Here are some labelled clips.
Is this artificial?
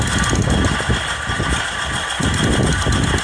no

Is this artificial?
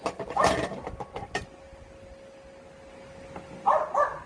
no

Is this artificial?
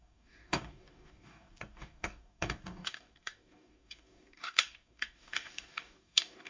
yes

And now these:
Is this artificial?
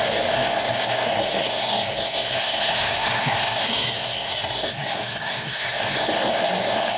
yes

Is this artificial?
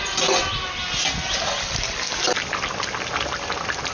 no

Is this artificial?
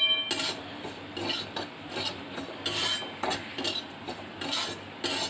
no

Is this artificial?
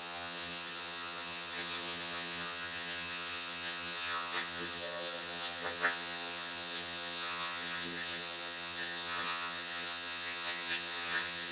yes